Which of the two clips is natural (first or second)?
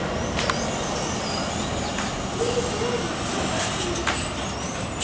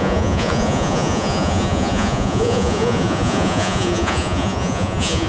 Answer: first